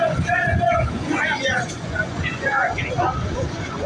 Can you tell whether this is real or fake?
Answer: fake